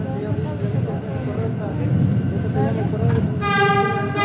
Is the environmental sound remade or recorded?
recorded